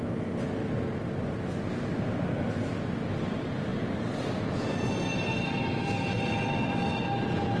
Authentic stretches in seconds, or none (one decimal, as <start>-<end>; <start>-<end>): 0.0-7.6